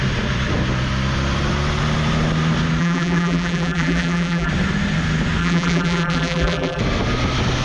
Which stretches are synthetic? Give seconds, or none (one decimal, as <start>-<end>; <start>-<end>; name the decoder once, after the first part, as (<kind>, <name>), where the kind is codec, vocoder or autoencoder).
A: 2.8-4.5 (vocoder, BigVGAN v2); 5.4-6.8